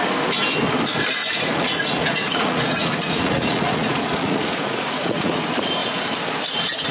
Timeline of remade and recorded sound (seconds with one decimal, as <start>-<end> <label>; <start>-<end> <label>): 0.0-1.2 recorded; 1.2-5.3 remade; 5.3-6.9 recorded